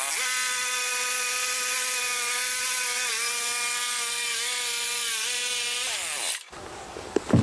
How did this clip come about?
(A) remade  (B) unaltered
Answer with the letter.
B